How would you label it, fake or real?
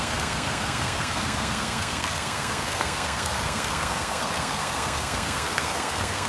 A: fake